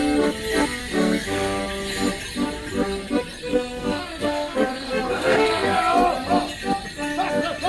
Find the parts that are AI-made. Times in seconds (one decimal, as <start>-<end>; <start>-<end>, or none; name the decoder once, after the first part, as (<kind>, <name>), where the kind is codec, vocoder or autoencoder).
0.8-1.6 (codec, SNAC); 3.5-5.8